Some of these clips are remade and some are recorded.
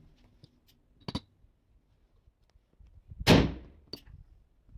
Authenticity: recorded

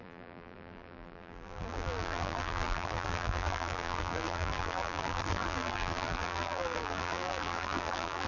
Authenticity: remade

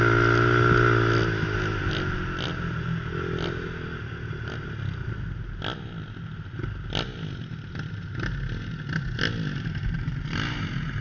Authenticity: recorded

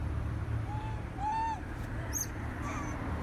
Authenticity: remade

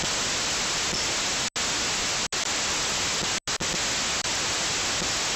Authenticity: recorded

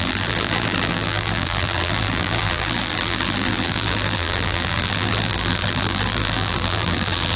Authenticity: remade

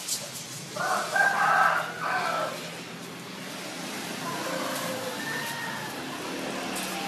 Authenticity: recorded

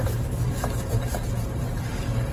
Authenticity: remade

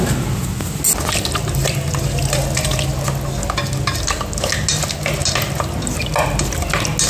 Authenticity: recorded